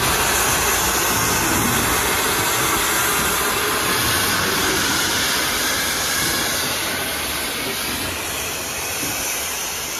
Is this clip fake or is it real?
real